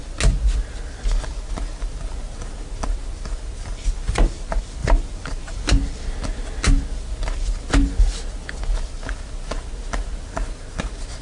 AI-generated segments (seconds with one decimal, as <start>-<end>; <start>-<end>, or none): none